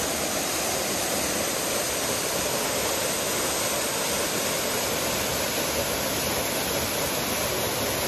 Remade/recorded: recorded